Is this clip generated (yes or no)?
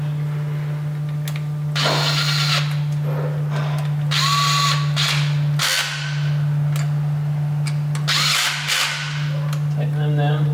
no